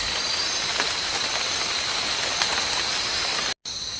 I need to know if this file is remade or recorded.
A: recorded